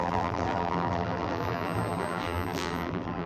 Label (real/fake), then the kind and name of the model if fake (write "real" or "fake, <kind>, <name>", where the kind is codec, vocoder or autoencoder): fake, vocoder, BigVGAN v2